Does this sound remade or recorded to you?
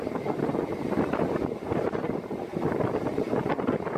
recorded